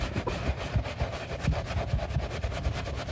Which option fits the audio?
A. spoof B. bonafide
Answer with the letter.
B